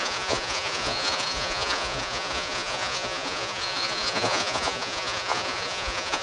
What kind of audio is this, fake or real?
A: fake